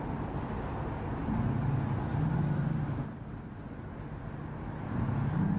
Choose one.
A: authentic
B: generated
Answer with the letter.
A